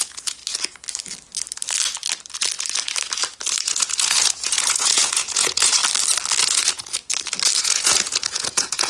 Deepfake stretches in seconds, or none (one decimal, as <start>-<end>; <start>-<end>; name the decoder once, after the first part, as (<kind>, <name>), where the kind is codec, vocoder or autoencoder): 0.0-0.4 (vocoder, Vocos); 3.6-5.8; 6.4-7.0; 7.6-8.9